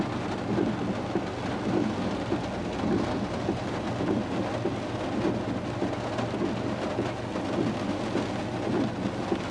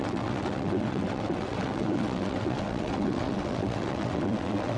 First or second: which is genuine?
first